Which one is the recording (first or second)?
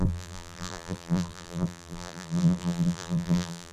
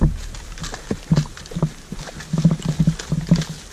second